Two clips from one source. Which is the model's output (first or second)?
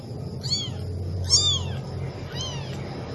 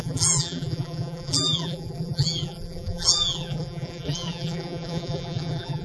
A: second